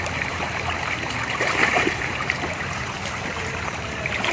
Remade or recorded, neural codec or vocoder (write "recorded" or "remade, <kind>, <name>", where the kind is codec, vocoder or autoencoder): remade, vocoder, BigVGAN v2